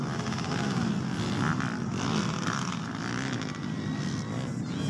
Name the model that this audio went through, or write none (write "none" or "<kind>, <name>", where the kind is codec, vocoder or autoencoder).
none